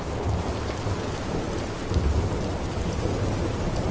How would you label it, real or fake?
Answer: real